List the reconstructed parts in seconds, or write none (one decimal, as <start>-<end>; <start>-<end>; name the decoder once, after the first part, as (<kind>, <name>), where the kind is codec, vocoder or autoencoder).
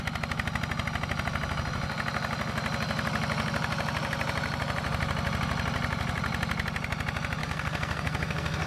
7.4-8.7 (codec, SNAC)